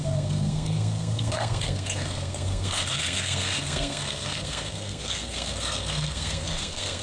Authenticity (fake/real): fake